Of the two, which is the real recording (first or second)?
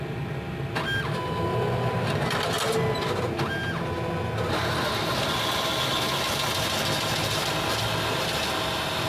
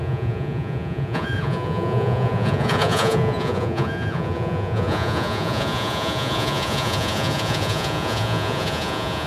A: first